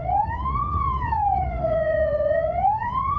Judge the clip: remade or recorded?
remade